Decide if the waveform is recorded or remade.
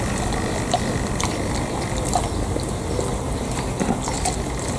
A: recorded